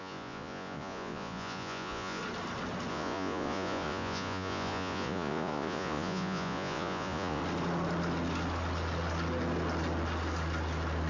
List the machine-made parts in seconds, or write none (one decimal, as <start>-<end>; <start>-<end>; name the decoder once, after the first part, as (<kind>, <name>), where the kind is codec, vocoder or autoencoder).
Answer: 0.0-2.2 (vocoder, Vocos); 2.9-7.4